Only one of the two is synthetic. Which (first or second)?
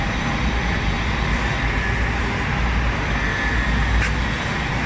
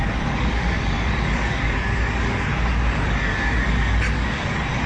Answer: second